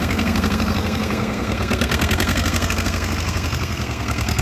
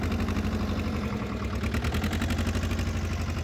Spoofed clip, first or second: first